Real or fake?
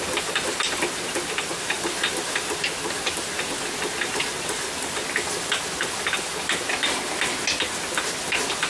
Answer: real